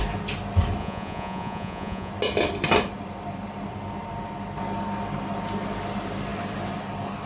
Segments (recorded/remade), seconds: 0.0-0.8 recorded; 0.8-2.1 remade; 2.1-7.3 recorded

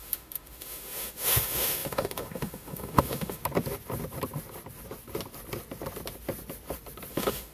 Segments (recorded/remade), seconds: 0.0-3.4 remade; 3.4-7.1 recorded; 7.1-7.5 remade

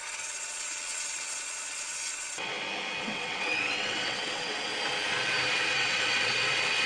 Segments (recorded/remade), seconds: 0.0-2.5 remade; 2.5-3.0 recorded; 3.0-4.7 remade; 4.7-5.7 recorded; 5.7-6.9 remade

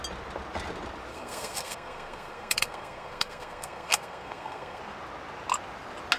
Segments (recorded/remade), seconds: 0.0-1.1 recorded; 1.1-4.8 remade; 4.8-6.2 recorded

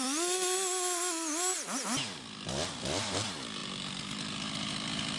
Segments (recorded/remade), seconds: 0.0-5.2 recorded

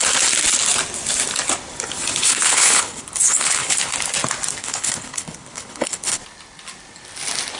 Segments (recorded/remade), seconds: 0.0-2.2 recorded; 2.2-3.9 remade; 3.9-4.6 recorded; 4.6-6.2 remade; 6.2-7.6 recorded

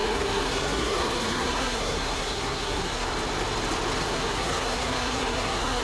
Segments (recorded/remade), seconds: 0.0-3.1 remade; 3.1-4.0 recorded; 4.0-5.8 remade

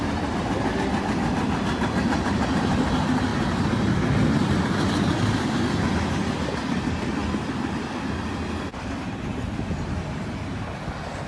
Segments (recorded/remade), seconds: 0.0-11.3 recorded